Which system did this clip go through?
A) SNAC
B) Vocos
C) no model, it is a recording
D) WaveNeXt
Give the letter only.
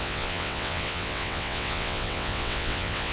D